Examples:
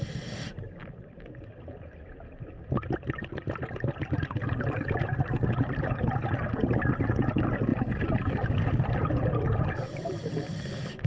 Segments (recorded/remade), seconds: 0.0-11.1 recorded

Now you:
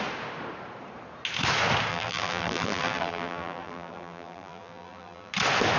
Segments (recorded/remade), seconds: 0.0-1.9 recorded; 1.9-5.3 remade; 5.3-5.8 recorded

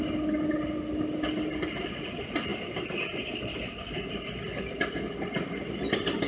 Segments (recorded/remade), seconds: 0.0-6.3 recorded

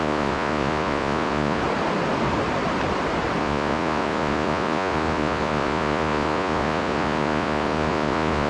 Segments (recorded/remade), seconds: 0.0-1.6 remade; 1.6-3.4 recorded; 3.4-8.5 remade

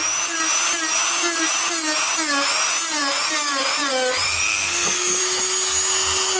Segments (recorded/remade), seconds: 0.0-4.5 recorded; 4.5-5.2 remade; 5.2-6.4 recorded

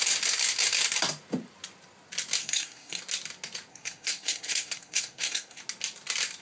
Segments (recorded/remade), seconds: 0.0-2.4 recorded; 2.4-3.0 remade; 3.0-3.7 recorded; 3.7-5.6 remade; 5.6-6.4 recorded

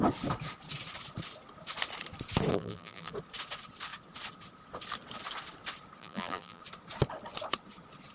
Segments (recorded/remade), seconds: 0.0-2.5 recorded; 2.5-3.1 remade; 3.1-6.0 recorded; 6.0-6.6 remade; 6.6-8.1 recorded